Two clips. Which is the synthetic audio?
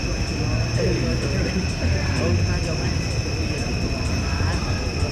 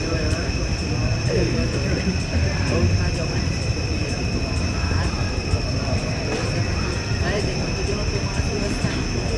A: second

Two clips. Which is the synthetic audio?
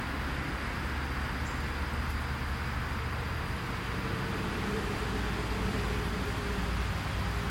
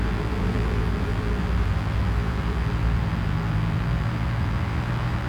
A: second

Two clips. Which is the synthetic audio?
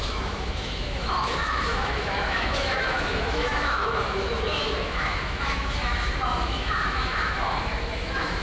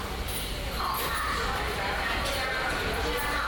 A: first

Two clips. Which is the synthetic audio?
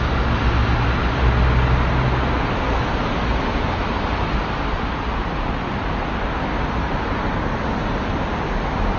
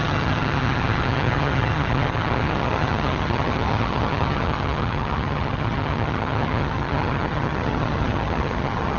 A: second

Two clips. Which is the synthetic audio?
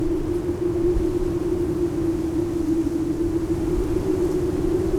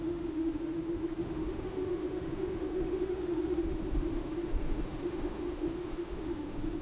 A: second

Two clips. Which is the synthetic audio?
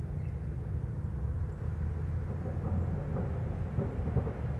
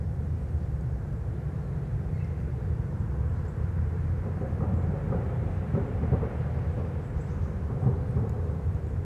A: second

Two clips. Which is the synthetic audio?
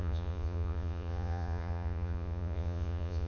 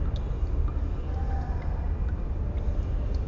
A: first